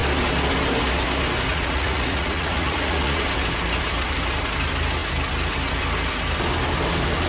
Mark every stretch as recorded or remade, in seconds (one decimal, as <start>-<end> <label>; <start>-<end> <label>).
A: 0.0-1.5 recorded; 1.5-3.2 remade; 3.2-7.3 recorded